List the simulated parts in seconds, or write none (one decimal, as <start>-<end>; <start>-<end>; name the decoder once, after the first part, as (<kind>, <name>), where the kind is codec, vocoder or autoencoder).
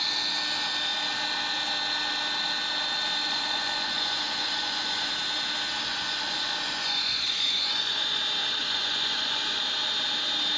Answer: 3.2-5.1 (vocoder, Vocos); 5.8-8.2; 8.6-9.6